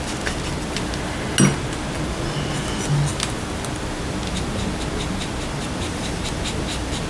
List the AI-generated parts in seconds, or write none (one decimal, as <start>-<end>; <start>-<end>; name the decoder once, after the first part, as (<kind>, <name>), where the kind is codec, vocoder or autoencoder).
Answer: none